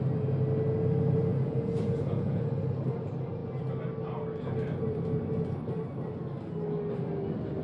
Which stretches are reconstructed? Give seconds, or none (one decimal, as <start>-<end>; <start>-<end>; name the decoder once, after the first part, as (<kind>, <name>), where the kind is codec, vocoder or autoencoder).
1.3-2.5 (vocoder, Vocos)